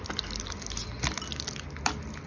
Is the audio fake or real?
real